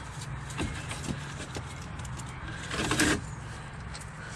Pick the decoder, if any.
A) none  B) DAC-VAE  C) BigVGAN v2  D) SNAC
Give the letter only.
A